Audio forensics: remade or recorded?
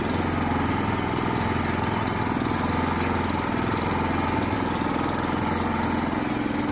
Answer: recorded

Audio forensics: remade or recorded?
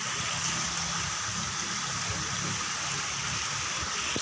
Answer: recorded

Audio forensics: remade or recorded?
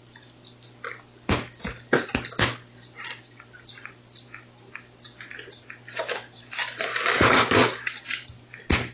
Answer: recorded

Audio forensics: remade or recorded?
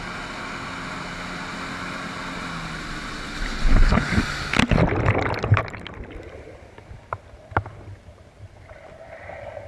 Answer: recorded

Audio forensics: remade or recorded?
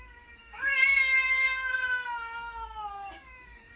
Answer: remade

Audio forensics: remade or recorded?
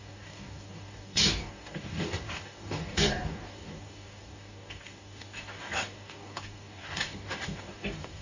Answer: remade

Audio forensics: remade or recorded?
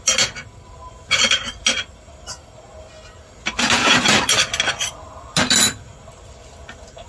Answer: recorded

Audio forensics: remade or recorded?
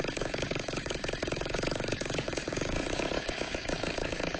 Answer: remade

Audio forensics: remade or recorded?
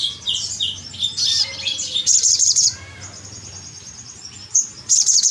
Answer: recorded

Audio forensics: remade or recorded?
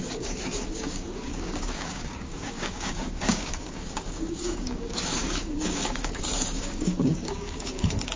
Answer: remade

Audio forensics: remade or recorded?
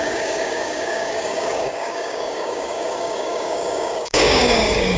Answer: remade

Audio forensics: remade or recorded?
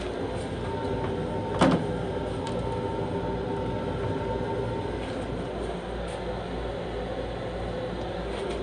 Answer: recorded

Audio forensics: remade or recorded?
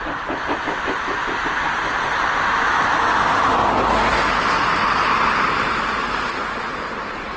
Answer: recorded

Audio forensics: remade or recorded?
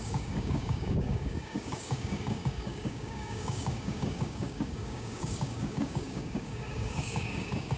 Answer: remade